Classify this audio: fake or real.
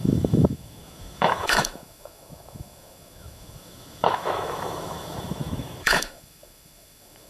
fake